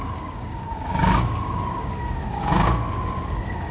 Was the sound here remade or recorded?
remade